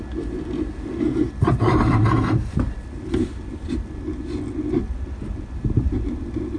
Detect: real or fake real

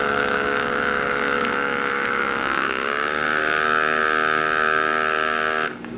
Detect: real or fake fake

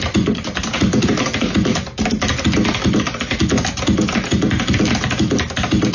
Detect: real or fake real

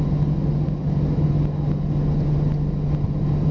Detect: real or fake real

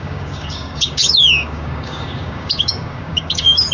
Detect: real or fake fake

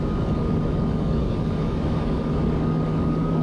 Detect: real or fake fake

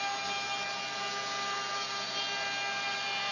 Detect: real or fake real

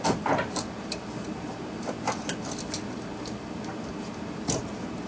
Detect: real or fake real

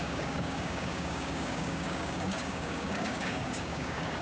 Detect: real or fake fake